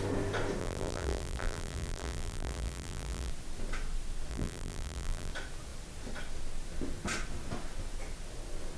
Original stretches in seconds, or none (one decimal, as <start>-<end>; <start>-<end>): 0.0-0.6; 3.3-4.3; 5.3-8.8